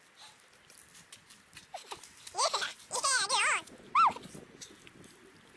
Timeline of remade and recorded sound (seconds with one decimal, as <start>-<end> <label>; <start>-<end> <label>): 0.0-5.6 recorded

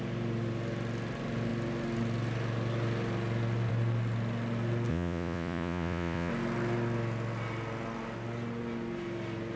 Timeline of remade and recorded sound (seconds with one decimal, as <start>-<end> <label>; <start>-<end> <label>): 0.0-4.9 recorded; 4.9-6.3 remade; 6.3-9.6 recorded